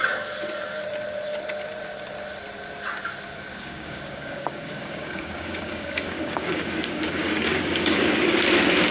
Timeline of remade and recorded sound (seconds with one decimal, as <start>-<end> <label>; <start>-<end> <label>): 0.0-3.5 recorded; 3.5-8.4 remade; 8.4-8.9 recorded